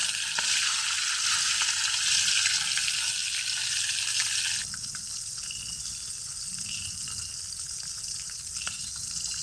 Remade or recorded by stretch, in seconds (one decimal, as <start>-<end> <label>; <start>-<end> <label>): 0.0-9.4 recorded